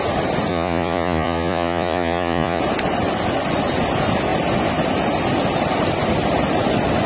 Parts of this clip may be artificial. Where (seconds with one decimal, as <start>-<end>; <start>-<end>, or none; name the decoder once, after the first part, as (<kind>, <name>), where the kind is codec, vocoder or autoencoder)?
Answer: 0.5-2.6 (vocoder, Vocos)